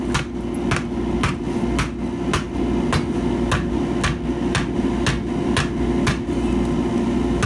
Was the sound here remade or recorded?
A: recorded